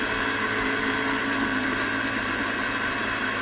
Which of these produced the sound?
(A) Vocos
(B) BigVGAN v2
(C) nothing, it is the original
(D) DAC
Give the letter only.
B